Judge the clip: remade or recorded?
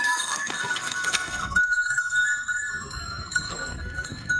remade